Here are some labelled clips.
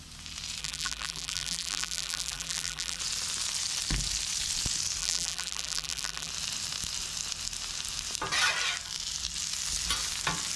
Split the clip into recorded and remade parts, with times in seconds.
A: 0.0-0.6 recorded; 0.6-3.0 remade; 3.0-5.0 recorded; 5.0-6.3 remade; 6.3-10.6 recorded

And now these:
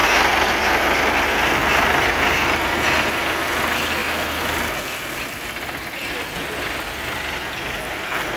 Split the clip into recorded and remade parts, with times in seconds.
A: 0.0-8.4 recorded

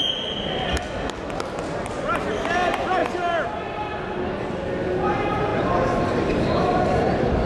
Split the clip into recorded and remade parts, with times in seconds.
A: 0.0-1.8 recorded; 1.8-3.0 remade; 3.0-5.1 recorded; 5.1-5.5 remade; 5.5-6.0 recorded; 6.0-7.5 remade

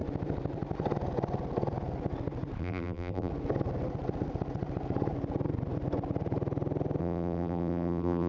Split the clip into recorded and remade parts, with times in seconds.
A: 0.0-2.6 recorded; 2.6-3.3 remade; 3.3-7.0 recorded; 7.0-8.3 remade